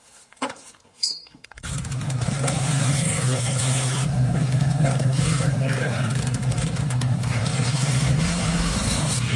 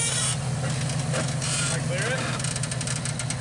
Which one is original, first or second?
second